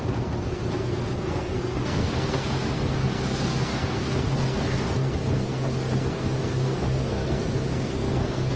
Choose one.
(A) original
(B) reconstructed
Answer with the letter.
B